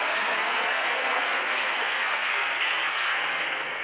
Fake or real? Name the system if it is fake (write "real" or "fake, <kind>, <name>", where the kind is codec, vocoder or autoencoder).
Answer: fake, codec, SNAC